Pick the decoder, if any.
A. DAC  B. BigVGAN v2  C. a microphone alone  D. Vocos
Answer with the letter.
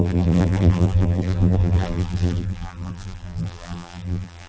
B